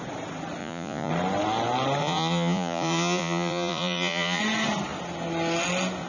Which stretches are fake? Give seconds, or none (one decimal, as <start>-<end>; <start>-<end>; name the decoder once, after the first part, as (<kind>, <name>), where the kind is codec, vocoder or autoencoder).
0.6-1.1 (vocoder, Vocos); 2.0-4.4